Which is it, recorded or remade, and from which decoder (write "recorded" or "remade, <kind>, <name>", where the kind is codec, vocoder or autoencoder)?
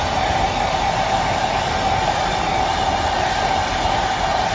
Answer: recorded